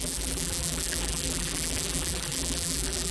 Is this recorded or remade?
remade